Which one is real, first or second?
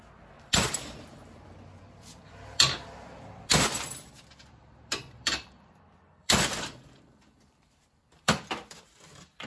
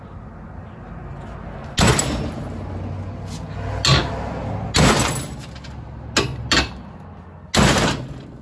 second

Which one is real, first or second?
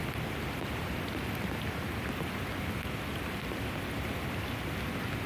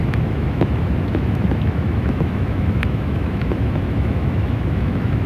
first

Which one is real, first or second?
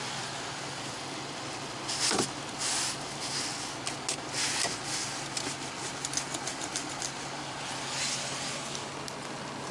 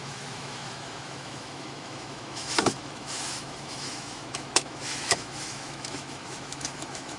first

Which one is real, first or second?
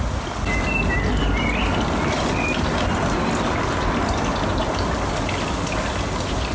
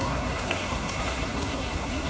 first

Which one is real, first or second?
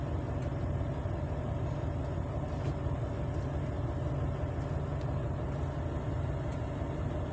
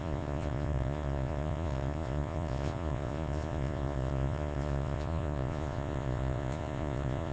first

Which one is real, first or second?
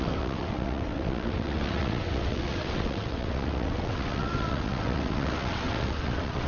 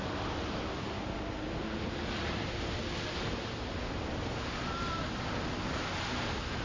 second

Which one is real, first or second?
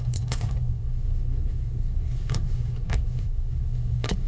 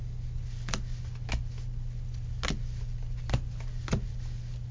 second